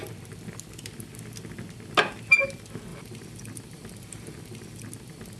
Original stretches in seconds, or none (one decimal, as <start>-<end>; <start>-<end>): 0.0-2.9; 4.8-5.4